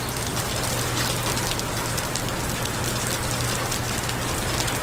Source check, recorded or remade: recorded